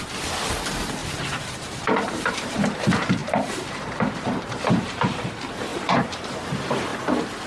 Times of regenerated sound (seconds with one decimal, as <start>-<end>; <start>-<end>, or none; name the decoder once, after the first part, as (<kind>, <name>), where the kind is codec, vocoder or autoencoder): 1.0-2.6 (vocoder, BigVGAN v2); 3.2-5.0; 5.7-6.4